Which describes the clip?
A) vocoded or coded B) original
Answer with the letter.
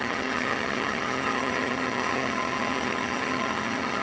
A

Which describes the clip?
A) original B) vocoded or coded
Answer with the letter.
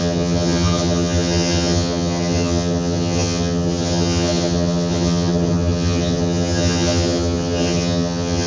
B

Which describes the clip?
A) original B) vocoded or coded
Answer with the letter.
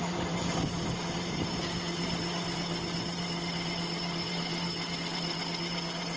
A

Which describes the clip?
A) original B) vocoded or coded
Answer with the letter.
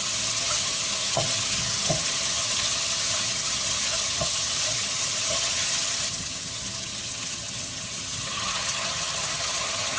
B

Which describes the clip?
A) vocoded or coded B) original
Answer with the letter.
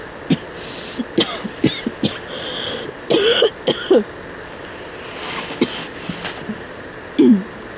B